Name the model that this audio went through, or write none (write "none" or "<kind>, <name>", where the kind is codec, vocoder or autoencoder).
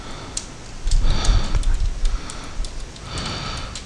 none